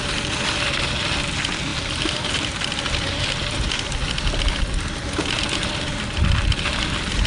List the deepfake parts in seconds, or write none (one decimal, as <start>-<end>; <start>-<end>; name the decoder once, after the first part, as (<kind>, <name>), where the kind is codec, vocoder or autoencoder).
none